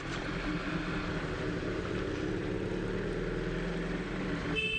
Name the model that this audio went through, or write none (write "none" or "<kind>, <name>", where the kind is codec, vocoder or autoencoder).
none